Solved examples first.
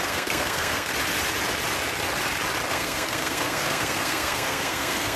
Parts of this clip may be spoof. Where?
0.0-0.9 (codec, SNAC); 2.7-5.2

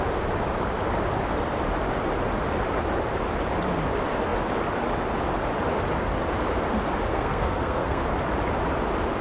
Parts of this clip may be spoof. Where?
7.1-8.0 (codec, SNAC)

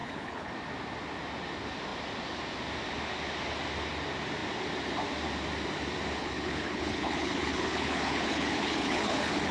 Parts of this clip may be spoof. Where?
0.0-0.5 (codec, HILCodec); 6.2-9.5

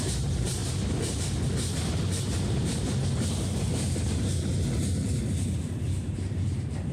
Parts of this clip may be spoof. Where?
0.0-0.6 (vocoder, BigVGAN v2); 4.0-4.5; 6.0-6.9

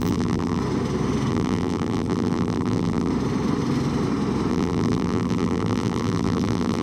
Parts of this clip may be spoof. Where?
0.0-0.6 (vocoder, BigVGAN v2); 1.3-3.1; 4.5-6.8

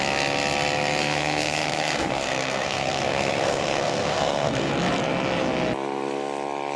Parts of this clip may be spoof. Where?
1.0-4.7 (codec, SNAC)